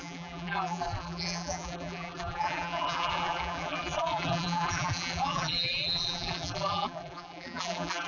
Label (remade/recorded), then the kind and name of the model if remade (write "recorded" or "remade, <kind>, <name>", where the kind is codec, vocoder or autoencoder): remade, vocoder, BigVGAN v2